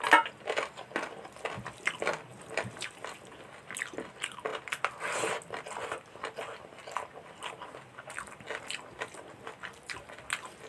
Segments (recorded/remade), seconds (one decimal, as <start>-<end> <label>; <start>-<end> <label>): 0.0-10.7 recorded